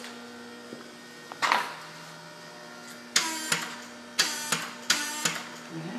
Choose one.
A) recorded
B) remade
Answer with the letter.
A